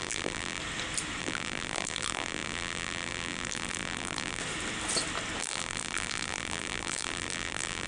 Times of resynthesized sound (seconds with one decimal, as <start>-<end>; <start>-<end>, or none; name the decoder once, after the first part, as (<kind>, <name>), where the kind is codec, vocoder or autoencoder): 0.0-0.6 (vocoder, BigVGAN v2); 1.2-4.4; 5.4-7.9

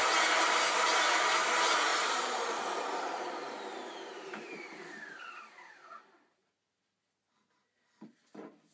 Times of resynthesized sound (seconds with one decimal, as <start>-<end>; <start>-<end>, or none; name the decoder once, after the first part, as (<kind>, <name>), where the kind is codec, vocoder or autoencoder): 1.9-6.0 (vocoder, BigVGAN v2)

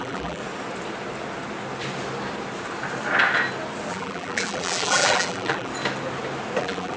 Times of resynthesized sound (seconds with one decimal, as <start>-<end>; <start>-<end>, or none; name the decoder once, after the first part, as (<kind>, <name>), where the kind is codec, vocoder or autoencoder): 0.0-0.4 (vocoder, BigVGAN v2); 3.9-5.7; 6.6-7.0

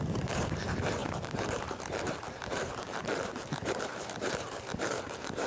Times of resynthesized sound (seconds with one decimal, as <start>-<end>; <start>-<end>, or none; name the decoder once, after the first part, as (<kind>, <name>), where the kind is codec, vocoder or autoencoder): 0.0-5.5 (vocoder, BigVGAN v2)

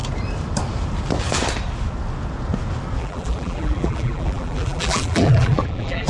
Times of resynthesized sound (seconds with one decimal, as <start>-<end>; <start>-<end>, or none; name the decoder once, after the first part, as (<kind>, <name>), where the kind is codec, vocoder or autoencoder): 3.0-6.1 (vocoder, BigVGAN v2)